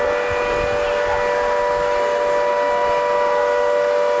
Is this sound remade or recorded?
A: recorded